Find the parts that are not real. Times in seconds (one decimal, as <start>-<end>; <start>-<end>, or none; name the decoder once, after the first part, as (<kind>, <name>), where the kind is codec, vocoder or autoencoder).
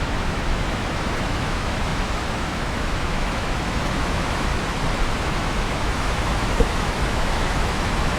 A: 0.0-4.5 (autoencoder, DAC-VAE); 5.2-8.2